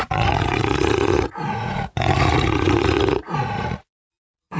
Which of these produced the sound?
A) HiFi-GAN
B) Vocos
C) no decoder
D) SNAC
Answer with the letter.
B